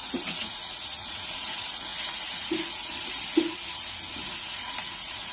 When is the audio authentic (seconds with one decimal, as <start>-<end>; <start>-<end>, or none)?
none

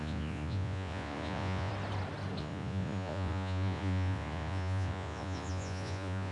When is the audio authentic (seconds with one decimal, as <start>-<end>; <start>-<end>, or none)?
1.7-2.4